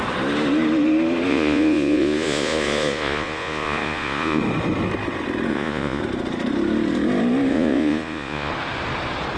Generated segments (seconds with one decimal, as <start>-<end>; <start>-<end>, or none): 1.3-4.4; 5.5-6.0; 7.5-8.5